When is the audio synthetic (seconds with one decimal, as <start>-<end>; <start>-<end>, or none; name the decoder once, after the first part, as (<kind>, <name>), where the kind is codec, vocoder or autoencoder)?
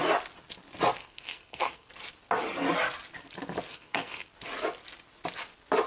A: 1.0-1.9 (codec, SNAC); 3.7-4.3